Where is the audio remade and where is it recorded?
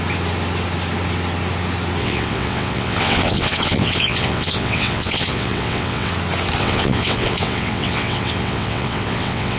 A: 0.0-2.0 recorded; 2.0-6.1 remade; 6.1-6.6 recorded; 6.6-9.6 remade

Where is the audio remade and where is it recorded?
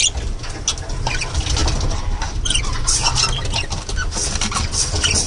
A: 0.0-5.3 recorded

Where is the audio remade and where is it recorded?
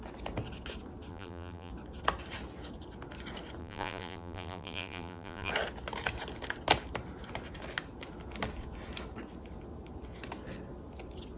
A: 0.0-1.1 recorded; 1.1-1.7 remade; 1.7-3.6 recorded; 3.6-5.5 remade; 5.5-11.4 recorded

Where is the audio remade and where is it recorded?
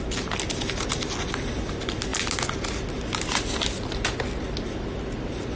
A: 0.0-5.6 recorded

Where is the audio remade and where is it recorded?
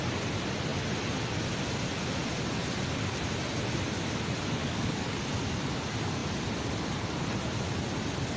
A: 0.0-4.6 recorded; 4.6-5.2 remade; 5.2-8.4 recorded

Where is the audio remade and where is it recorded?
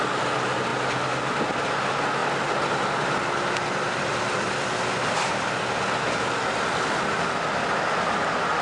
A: 0.0-8.6 recorded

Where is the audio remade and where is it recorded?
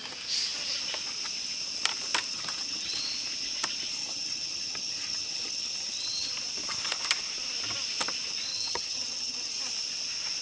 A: 0.0-2.3 recorded; 2.3-3.0 remade; 3.0-4.0 recorded; 4.0-6.3 remade; 6.3-8.5 recorded; 8.5-9.5 remade; 9.5-10.4 recorded